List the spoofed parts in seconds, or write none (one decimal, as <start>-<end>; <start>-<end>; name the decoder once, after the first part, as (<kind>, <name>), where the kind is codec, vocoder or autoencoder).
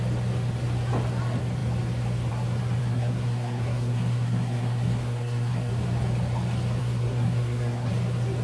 2.8-5.7 (codec, SNAC); 6.8-7.9